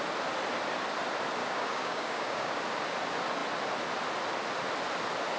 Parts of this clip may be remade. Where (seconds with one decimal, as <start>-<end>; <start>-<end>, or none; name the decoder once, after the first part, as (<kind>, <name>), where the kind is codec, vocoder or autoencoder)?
1.4-2.6 (codec, DAC)